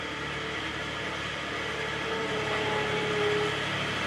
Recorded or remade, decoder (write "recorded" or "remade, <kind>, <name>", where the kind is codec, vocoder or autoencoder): recorded